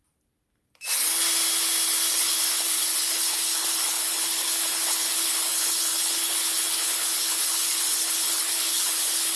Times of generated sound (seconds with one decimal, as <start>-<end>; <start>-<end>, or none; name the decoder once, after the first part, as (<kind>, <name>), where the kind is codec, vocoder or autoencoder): 2.1-9.4 (codec, HILCodec)